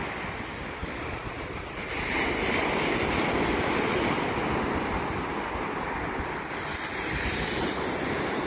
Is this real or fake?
real